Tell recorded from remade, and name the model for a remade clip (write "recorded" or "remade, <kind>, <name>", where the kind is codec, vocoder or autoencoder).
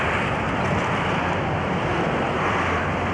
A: remade, vocoder, BigVGAN v2